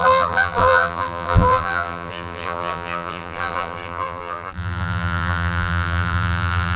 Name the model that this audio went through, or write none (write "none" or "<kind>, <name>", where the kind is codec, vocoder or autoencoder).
vocoder, BigVGAN v2